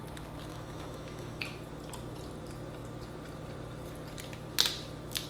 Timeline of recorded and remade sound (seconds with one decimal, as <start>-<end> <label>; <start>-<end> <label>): 0.0-0.5 recorded; 0.5-1.4 remade; 1.4-5.3 recorded